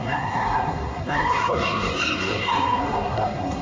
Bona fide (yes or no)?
no